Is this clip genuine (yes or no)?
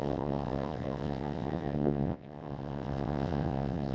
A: no